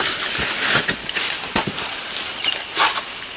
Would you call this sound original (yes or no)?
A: yes